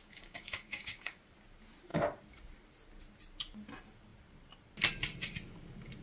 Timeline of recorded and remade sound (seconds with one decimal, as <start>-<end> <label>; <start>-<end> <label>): 0.0-1.2 remade; 1.2-6.0 recorded